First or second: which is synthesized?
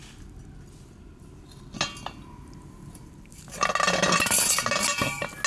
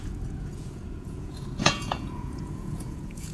second